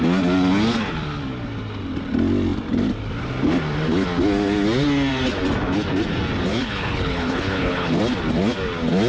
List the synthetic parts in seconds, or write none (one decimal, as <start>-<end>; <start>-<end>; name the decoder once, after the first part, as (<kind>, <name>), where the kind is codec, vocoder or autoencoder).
6.5-8.0 (codec, HILCodec)